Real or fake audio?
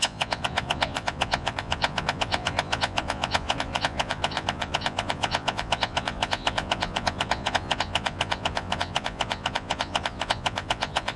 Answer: fake